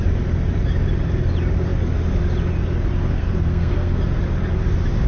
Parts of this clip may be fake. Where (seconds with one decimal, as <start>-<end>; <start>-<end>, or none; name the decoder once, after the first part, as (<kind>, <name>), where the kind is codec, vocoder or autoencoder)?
3.1-4.0 (codec, SNAC)